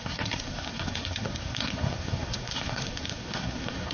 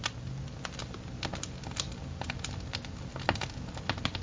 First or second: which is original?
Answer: second